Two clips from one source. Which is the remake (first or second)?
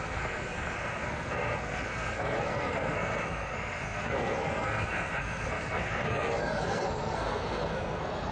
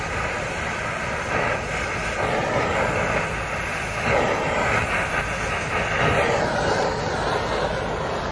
first